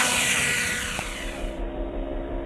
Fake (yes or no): yes